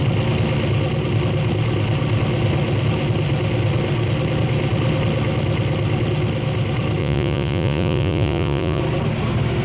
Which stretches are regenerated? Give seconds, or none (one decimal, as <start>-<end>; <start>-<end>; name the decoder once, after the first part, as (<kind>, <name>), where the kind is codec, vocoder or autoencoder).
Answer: 7.0-8.8 (vocoder, Vocos)